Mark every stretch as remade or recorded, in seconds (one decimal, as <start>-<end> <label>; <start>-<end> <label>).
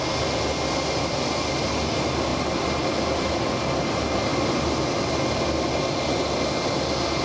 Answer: 0.0-2.3 recorded; 2.3-2.9 remade; 2.9-7.2 recorded